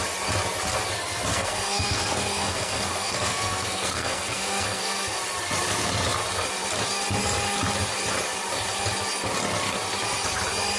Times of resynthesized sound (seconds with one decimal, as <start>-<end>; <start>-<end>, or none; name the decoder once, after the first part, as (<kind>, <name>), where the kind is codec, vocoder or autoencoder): 1.3-5.2 (codec, SNAC)